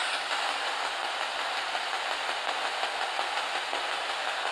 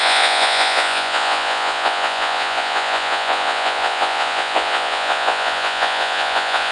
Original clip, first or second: first